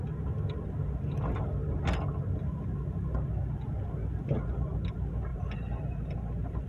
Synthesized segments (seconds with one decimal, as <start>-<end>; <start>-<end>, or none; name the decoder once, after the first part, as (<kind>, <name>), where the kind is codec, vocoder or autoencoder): none